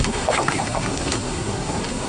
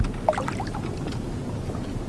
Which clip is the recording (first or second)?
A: second